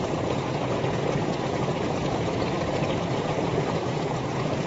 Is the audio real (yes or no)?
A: no